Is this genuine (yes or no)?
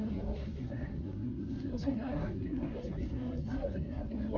no